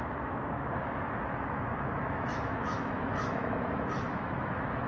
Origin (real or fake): fake